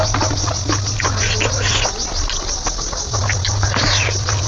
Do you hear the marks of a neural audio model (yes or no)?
no